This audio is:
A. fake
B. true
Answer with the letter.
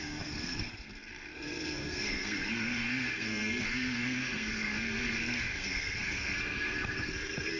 A